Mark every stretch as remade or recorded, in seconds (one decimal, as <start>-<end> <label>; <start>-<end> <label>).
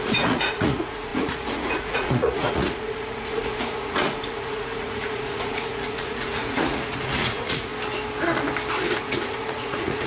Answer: 0.0-7.7 remade; 7.7-9.0 recorded; 9.0-10.1 remade